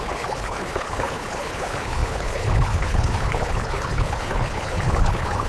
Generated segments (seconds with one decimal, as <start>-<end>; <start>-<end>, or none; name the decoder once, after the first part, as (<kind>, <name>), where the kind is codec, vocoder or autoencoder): 0.0-5.5 (codec, HILCodec)